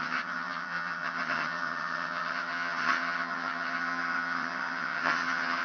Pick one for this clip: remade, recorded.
remade